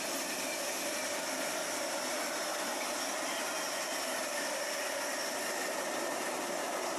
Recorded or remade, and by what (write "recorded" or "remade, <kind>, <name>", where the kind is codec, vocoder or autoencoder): recorded